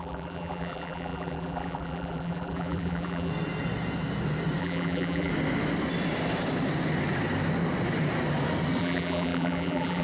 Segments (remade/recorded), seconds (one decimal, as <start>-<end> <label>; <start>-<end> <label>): 0.0-3.3 remade; 3.3-4.6 recorded; 4.6-5.3 remade; 5.3-8.8 recorded; 8.8-10.0 remade